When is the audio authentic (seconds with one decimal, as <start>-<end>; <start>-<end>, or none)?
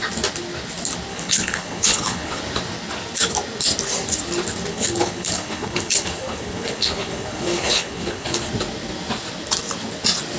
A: 0.0-1.1; 2.4-4.7; 8.5-10.4